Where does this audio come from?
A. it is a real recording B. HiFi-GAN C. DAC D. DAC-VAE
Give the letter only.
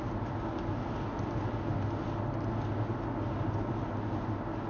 A